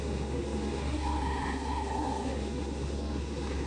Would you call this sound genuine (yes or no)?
no